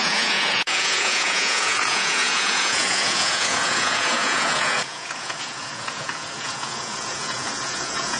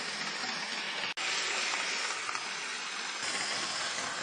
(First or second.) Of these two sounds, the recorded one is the second